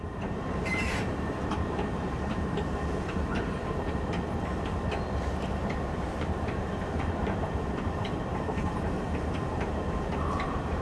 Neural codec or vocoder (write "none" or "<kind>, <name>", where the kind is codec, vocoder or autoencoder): vocoder, BigVGAN v2